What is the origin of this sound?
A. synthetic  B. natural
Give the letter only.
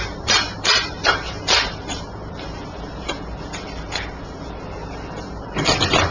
A